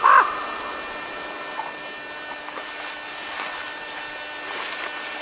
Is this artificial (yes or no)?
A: no